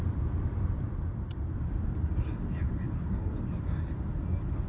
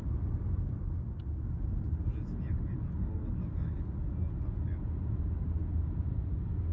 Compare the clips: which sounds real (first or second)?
second